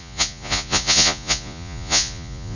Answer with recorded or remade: remade